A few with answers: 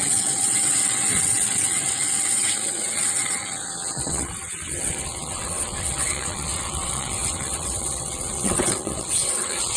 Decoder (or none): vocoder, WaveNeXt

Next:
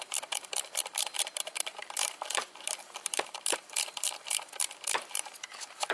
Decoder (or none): vocoder, BigVGAN v2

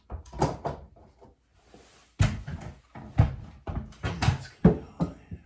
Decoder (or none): none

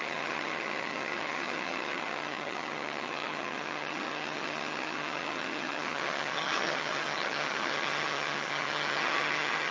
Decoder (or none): vocoder, HiFi-GAN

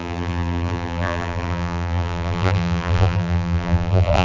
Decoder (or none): vocoder, BigVGAN v2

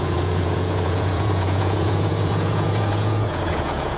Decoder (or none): vocoder, Vocos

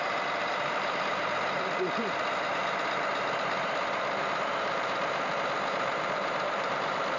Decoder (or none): vocoder, BigVGAN v2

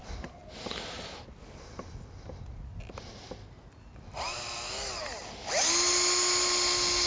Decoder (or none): none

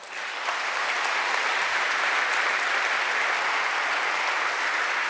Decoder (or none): none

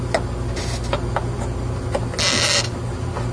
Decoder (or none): none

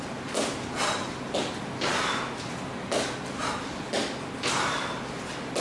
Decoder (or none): none